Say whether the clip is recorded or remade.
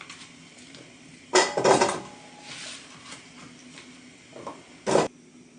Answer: recorded